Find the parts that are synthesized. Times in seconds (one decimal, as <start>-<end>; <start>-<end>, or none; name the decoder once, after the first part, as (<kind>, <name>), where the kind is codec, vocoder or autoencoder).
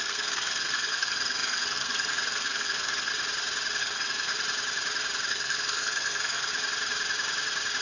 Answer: 0.0-3.1 (codec, SNAC); 3.8-4.3; 5.3-6.5